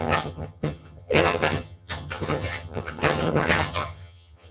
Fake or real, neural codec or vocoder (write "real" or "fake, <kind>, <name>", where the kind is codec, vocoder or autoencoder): fake, vocoder, HiFi-GAN